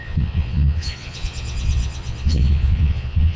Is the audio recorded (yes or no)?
no